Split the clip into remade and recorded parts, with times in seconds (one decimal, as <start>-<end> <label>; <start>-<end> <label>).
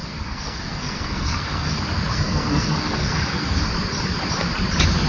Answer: 0.0-1.7 remade; 1.7-2.1 recorded; 2.1-3.6 remade; 3.6-5.1 recorded